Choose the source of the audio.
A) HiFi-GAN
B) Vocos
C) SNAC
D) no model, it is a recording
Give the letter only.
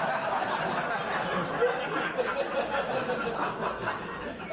D